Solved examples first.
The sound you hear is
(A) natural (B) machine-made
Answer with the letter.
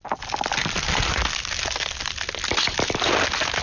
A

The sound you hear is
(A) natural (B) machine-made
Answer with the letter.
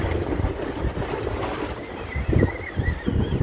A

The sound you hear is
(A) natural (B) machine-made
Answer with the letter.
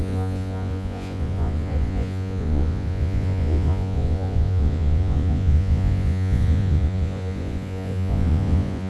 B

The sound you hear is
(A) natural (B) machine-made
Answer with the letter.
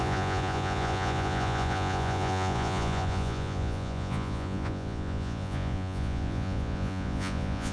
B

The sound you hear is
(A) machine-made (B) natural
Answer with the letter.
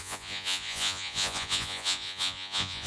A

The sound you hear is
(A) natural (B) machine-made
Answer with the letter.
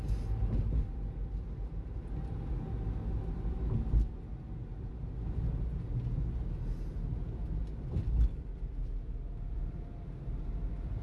A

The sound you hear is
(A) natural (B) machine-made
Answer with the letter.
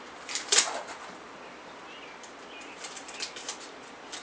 A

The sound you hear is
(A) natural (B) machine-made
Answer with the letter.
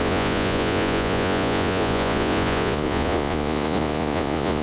B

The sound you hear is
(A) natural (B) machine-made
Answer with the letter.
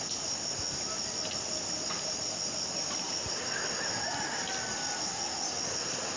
A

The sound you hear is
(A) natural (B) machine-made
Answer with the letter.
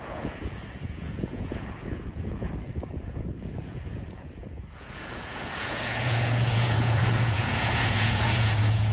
B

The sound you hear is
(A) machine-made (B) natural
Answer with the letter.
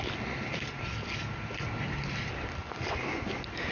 B